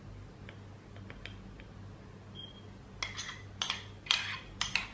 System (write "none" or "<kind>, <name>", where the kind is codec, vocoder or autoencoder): none